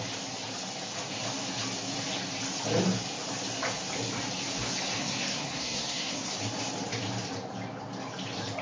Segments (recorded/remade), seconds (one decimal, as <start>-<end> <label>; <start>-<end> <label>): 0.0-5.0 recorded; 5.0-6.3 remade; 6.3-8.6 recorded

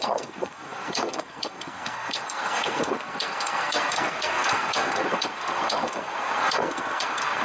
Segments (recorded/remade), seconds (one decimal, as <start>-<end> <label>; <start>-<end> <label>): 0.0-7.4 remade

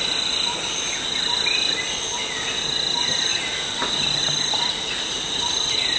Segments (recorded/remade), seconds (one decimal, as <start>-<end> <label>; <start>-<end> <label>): 0.0-6.0 recorded

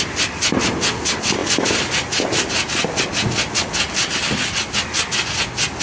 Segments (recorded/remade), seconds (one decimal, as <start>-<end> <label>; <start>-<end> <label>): 0.0-5.8 recorded

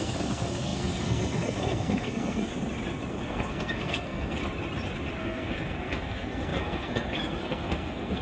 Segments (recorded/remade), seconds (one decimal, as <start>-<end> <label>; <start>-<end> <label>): 0.0-2.5 remade; 2.5-3.1 recorded; 3.1-4.4 remade; 4.4-5.2 recorded; 5.2-8.2 remade

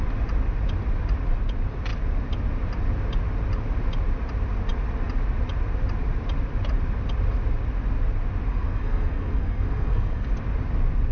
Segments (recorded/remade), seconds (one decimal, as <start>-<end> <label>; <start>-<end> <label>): 0.0-8.5 recorded; 8.5-10.3 remade; 10.3-11.1 recorded